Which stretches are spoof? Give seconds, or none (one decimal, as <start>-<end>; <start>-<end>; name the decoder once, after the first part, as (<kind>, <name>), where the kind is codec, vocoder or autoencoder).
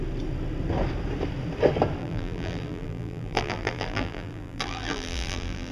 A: 2.0-5.7 (vocoder, BigVGAN v2)